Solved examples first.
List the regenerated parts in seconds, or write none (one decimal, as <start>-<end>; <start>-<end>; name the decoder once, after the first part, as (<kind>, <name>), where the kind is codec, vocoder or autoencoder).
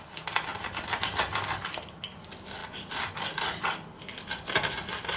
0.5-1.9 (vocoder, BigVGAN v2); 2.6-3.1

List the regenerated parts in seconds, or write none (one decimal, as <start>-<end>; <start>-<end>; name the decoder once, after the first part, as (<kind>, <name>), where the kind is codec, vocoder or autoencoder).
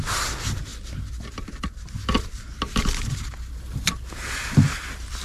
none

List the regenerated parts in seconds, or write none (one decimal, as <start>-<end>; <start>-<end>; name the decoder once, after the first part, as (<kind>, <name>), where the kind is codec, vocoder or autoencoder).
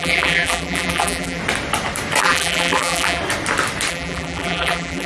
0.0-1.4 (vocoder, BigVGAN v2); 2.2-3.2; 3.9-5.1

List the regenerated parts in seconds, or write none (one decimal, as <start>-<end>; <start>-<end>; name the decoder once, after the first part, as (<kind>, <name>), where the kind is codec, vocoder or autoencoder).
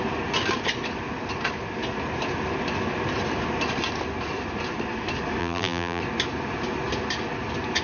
5.4-6.0 (vocoder, BigVGAN v2)